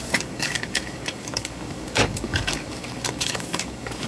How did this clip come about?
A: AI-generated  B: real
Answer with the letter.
A